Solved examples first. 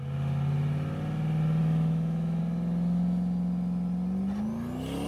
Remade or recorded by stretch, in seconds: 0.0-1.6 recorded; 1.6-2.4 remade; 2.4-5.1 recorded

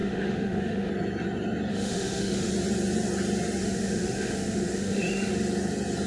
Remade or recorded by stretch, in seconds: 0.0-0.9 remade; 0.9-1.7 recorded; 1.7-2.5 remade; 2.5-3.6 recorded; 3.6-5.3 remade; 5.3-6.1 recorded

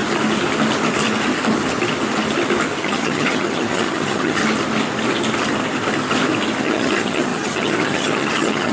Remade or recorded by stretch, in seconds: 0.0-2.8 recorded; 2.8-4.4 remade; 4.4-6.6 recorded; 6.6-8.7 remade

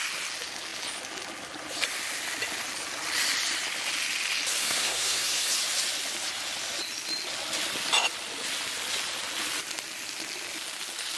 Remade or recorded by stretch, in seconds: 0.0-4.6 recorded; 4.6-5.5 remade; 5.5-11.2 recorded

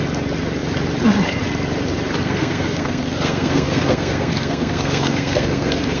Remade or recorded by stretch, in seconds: 0.0-2.2 recorded; 2.2-6.0 remade